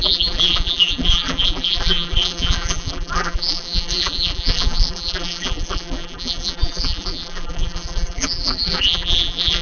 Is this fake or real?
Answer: fake